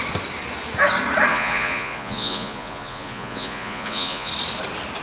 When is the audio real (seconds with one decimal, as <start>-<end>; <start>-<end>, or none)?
0.0-1.3; 4.3-5.0